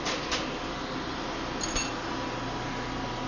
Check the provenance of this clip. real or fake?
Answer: real